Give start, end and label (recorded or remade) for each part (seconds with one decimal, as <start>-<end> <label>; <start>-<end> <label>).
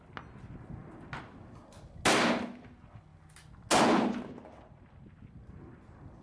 0.0-6.2 recorded